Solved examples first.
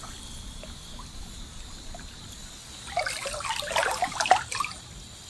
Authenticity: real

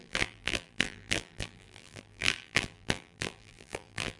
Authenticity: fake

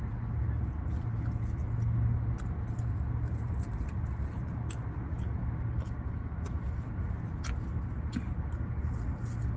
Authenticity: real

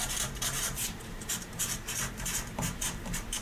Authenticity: fake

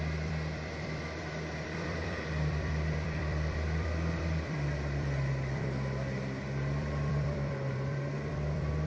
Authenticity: fake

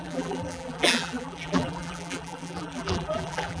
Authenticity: fake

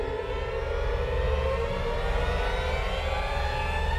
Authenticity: real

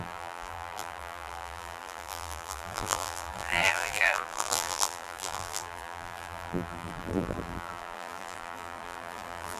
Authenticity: fake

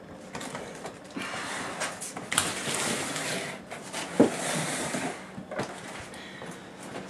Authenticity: real